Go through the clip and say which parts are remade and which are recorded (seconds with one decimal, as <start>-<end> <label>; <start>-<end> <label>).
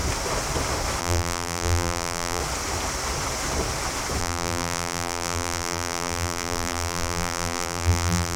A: 0.0-1.0 recorded; 1.0-2.4 remade; 2.4-4.2 recorded; 4.2-8.4 remade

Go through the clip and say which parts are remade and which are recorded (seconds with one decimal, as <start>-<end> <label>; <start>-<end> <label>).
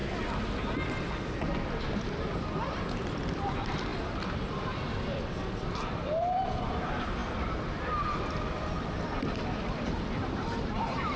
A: 0.0-2.1 recorded; 2.1-11.2 remade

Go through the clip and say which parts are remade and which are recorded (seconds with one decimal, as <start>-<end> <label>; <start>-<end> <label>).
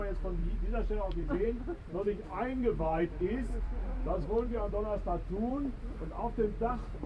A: 0.0-0.4 recorded; 0.4-4.7 remade; 4.7-5.5 recorded; 5.5-6.1 remade; 6.1-7.1 recorded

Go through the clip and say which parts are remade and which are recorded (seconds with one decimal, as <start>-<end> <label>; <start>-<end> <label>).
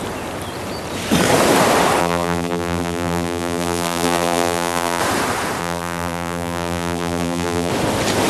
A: 0.0-2.0 recorded; 2.0-5.0 remade; 5.0-5.6 recorded; 5.6-7.7 remade; 7.7-8.3 recorded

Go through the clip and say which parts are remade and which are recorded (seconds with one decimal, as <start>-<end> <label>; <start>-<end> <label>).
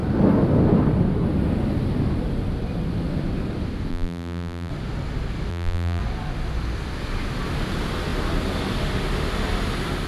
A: 0.0-3.9 recorded; 3.9-4.7 remade; 4.7-5.5 recorded; 5.5-6.0 remade; 6.0-10.1 recorded